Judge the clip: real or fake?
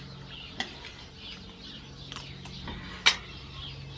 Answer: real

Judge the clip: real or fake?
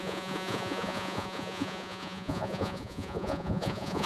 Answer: fake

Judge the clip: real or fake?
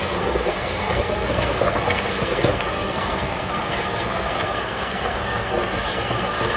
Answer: fake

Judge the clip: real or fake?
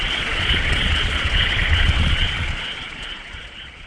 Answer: fake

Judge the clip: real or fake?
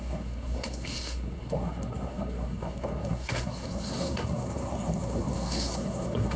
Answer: fake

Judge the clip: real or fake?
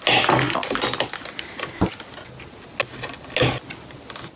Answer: real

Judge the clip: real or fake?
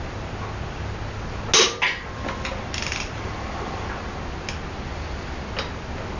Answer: real